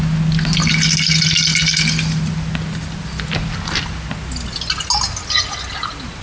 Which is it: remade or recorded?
recorded